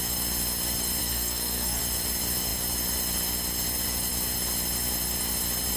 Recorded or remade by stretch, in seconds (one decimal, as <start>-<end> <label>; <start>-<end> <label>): 0.0-1.0 recorded; 1.0-1.8 remade; 1.8-5.8 recorded